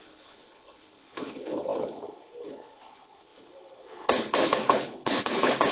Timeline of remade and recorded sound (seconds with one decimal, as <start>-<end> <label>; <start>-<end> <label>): 0.0-5.7 remade